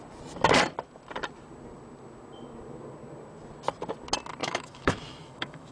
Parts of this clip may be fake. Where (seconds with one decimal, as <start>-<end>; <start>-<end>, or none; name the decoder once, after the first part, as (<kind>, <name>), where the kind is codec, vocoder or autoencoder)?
4.4-5.7 (autoencoder, DAC-VAE)